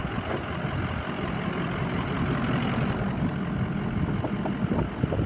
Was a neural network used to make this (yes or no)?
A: no